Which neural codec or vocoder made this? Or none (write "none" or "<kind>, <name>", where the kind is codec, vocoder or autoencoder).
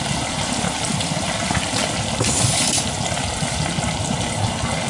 none